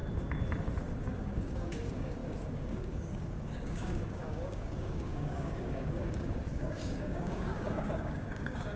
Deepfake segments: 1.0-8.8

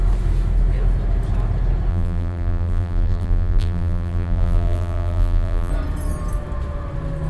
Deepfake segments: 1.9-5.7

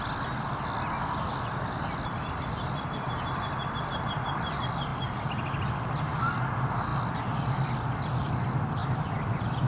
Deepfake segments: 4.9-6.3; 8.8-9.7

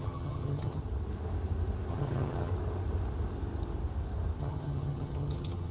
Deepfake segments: 0.0-0.8; 1.9-2.5; 4.4-5.7

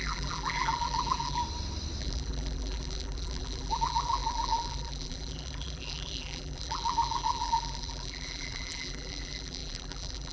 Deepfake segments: 0.0-1.4; 2.0-10.3

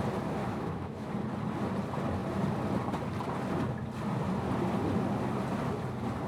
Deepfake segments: 0.4-1.1

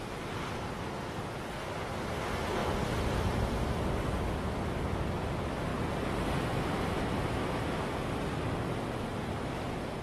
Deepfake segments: none